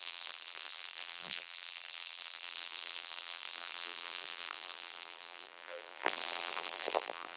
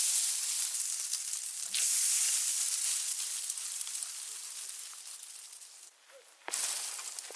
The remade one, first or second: first